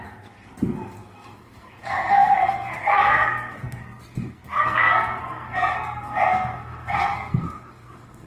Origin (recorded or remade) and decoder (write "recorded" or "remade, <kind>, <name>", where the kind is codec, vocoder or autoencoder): remade, codec, SNAC